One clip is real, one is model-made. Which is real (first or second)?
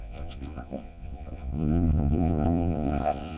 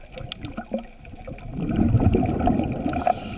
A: second